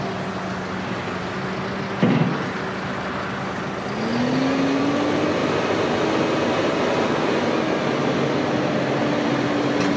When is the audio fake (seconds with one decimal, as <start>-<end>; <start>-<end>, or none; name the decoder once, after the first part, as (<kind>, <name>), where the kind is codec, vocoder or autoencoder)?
none